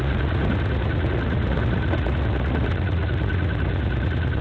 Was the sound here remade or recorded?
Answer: remade